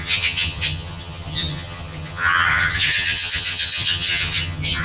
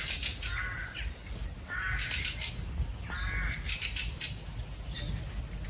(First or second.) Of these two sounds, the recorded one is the second